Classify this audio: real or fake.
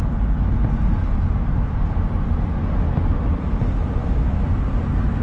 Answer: real